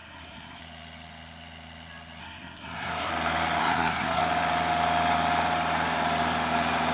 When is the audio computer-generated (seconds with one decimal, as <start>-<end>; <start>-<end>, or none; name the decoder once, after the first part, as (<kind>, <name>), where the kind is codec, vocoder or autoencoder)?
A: 0.0-0.6 (codec, SNAC); 2.2-3.1; 3.6-4.2